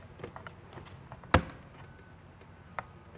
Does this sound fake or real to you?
real